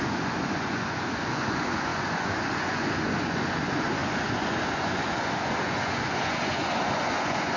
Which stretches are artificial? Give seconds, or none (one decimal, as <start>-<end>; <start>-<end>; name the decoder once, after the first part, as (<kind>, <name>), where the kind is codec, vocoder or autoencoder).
0.0-7.6 (vocoder, Vocos)